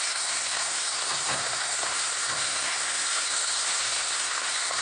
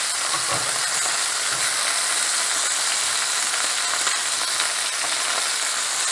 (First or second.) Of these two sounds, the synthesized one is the first